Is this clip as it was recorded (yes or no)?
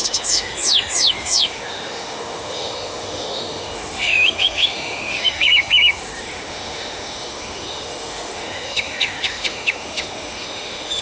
no